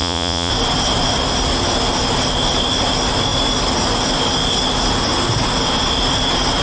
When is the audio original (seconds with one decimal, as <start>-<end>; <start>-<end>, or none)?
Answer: 0.5-6.6